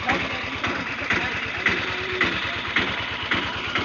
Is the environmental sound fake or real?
fake